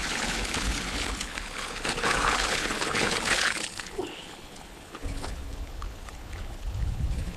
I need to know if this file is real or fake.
fake